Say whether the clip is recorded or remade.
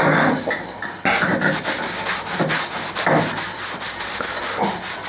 recorded